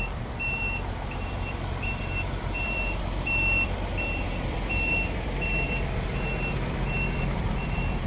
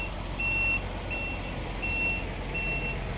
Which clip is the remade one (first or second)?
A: first